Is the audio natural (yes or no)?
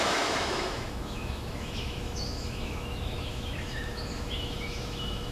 no